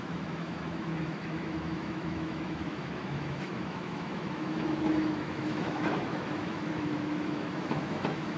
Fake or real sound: fake